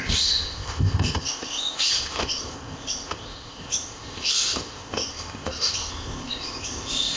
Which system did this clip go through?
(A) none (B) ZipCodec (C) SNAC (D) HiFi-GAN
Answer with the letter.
B